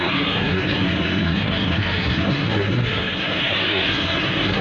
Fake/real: fake